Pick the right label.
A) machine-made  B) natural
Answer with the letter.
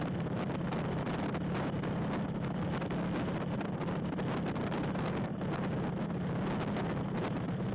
B